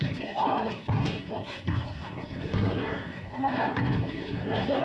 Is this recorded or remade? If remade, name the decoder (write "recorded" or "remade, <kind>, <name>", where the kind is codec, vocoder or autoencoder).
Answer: remade, codec, SNAC